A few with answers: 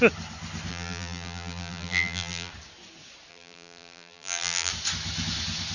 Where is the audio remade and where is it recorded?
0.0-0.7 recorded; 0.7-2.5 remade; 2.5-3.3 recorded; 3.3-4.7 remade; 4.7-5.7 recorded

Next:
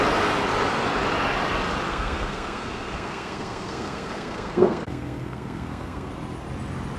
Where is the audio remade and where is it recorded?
0.0-1.9 recorded; 1.9-6.1 remade; 6.1-7.0 recorded

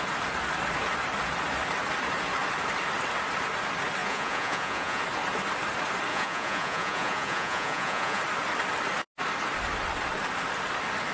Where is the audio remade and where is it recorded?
0.0-4.0 recorded; 4.0-5.0 remade; 5.0-6.1 recorded; 6.1-8.2 remade; 8.2-11.1 recorded